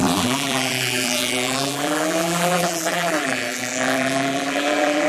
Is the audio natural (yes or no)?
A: no